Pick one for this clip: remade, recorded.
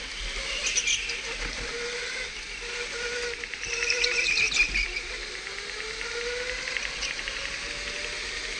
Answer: recorded